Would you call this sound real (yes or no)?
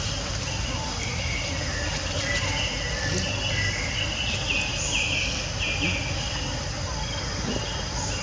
yes